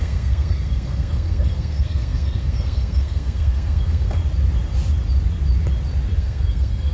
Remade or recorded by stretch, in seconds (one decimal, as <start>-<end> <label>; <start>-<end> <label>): 0.0-4.2 remade; 4.2-6.2 recorded; 6.2-6.9 remade